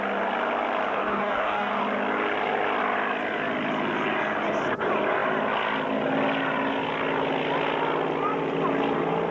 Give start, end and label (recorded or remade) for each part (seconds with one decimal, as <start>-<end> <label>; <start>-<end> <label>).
0.0-0.9 recorded; 0.9-1.7 remade; 1.7-9.3 recorded